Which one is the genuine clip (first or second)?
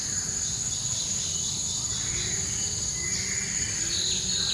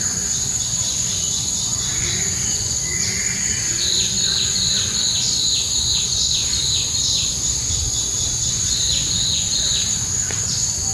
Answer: first